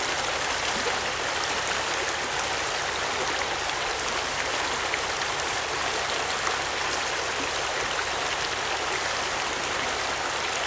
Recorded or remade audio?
recorded